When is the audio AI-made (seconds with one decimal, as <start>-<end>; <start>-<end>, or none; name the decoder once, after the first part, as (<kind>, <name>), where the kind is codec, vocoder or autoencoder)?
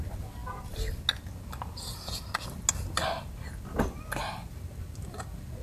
none